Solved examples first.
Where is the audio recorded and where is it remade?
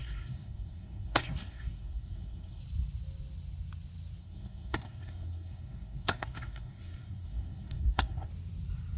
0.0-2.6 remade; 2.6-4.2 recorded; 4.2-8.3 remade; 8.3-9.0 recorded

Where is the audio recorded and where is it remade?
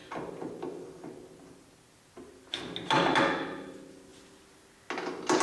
0.0-5.4 recorded